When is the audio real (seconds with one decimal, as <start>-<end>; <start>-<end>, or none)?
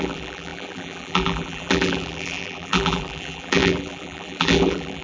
none